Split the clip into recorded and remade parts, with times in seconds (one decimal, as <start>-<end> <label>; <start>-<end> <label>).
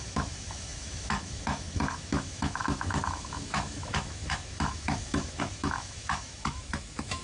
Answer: 0.0-7.2 remade